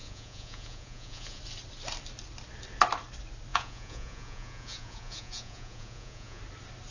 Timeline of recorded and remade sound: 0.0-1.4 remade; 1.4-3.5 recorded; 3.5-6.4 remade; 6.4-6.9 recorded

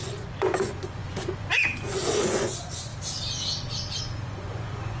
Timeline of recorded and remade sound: 0.0-2.9 remade; 2.9-4.0 recorded; 4.0-5.0 remade

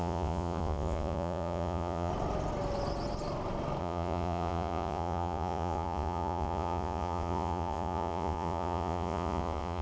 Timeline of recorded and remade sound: 0.0-2.1 remade; 2.1-3.8 recorded; 3.8-9.8 remade

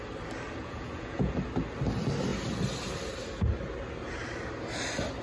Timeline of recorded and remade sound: 0.0-0.6 recorded; 0.6-1.3 remade; 1.3-5.2 recorded